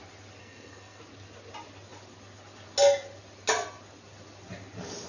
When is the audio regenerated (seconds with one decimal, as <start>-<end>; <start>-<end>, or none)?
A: 0.4-1.0

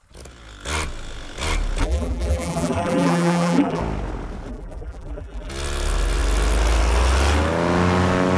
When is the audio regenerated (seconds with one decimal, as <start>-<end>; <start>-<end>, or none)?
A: 1.8-3.8; 4.5-5.5

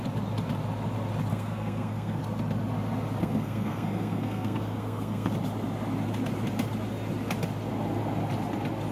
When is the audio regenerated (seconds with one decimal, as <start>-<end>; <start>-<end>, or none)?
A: 1.3-2.2; 3.2-5.3

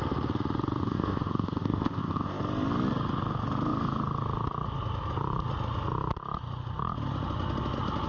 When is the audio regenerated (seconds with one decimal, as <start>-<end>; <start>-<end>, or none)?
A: 0.8-2.4

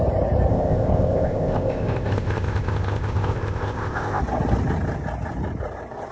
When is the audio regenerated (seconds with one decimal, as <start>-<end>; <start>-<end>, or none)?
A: 0.5-4.2

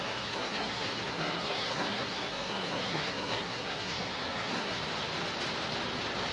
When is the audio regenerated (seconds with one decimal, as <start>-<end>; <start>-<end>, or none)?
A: 0.0-4.8

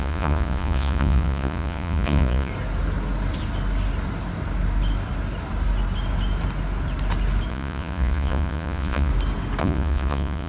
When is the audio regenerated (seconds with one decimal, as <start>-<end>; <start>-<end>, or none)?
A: 0.0-2.5; 7.5-9.1; 9.6-10.5